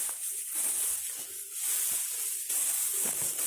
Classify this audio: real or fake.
real